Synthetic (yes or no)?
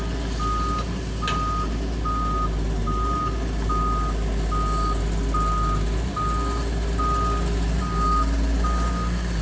no